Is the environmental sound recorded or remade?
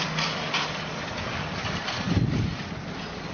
recorded